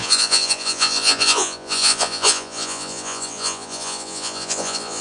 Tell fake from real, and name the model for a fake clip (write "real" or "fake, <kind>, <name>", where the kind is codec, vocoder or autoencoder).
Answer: fake, vocoder, Vocos